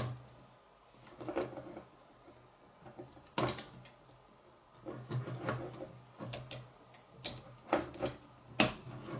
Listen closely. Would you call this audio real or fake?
real